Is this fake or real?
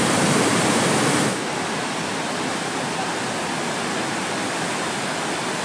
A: real